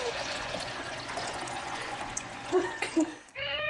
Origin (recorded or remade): remade